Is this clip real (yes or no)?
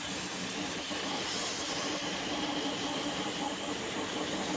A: yes